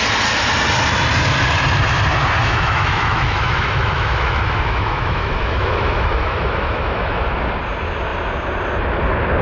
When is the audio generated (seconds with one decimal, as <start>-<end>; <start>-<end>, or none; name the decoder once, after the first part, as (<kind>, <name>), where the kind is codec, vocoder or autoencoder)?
2.4-7.2 (autoencoder, DAC-VAE)